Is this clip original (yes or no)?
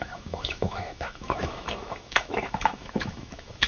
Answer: no